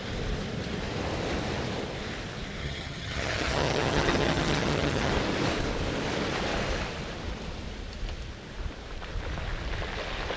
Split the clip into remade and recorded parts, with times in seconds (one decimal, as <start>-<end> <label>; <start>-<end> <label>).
0.0-2.6 recorded; 2.6-5.1 remade; 5.1-10.4 recorded